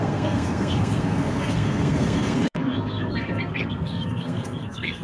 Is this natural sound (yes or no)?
no